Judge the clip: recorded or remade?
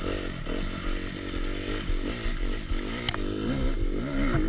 recorded